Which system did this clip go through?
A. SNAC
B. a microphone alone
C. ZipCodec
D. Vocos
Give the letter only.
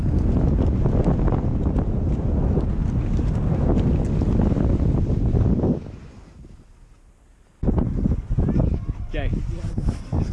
B